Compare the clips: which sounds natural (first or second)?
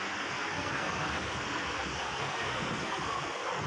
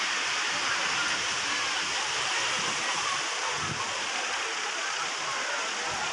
second